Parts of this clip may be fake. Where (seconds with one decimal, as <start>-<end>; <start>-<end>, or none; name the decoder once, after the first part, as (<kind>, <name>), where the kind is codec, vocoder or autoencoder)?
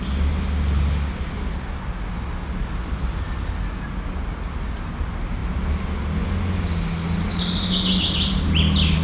none